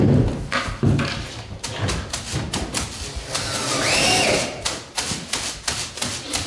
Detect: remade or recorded recorded